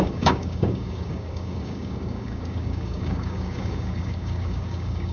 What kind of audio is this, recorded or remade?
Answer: remade